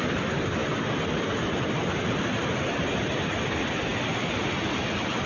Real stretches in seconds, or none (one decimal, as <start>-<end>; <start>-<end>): 0.0-5.3